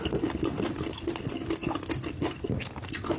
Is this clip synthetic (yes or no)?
no